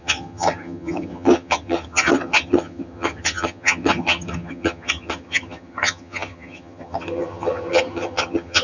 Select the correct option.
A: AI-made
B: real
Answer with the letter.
A